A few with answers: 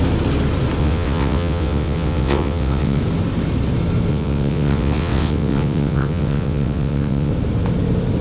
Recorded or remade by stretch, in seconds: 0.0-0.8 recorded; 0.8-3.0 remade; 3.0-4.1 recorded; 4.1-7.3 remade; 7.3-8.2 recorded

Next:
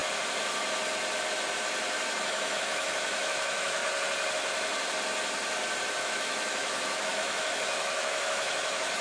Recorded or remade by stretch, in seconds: 0.0-2.2 recorded; 2.2-3.8 remade; 3.8-5.9 recorded; 5.9-9.0 remade

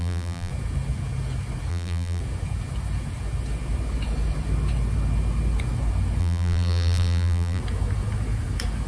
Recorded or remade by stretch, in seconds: 0.0-0.5 remade; 0.5-1.7 recorded; 1.7-2.2 remade; 2.2-6.2 recorded; 6.2-7.6 remade; 7.6-8.9 recorded

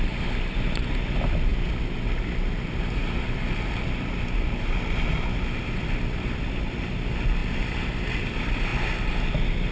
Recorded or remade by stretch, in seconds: 0.0-9.7 recorded

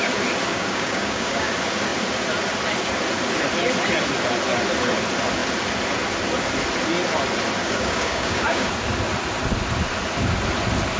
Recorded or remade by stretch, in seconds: 0.0-0.5 recorded; 0.5-1.5 remade; 1.5-7.6 recorded; 7.6-8.7 remade; 8.7-11.0 recorded